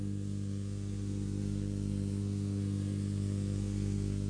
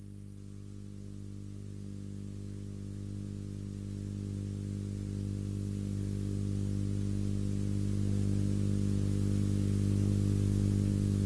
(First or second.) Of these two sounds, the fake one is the first